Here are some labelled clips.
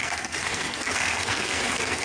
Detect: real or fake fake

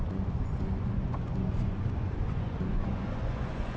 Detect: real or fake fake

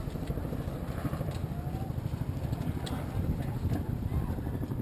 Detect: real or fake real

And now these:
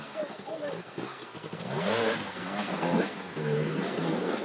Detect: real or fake fake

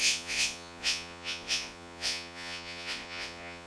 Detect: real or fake fake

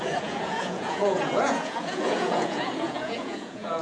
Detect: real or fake fake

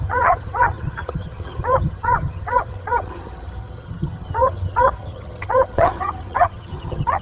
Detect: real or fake fake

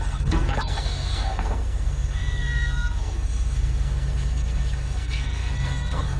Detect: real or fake fake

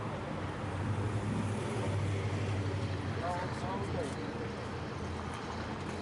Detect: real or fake real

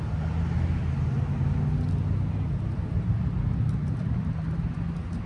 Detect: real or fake real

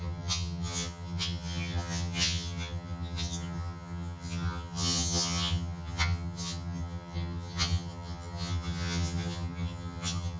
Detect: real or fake fake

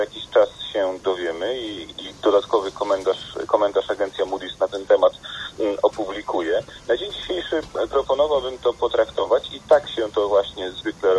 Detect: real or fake real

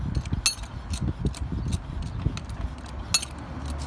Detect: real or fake real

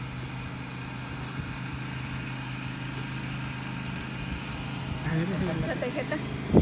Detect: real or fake real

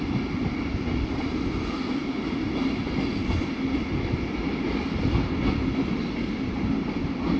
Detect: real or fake real